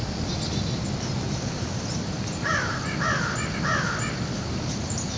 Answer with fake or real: real